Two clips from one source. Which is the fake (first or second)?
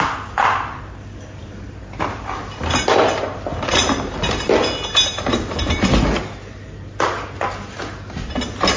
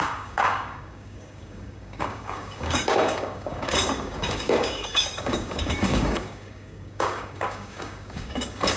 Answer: second